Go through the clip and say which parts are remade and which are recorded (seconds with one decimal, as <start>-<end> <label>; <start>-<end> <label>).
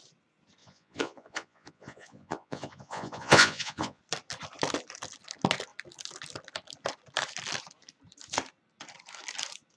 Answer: 0.0-0.6 recorded; 0.6-4.0 remade; 4.0-9.8 recorded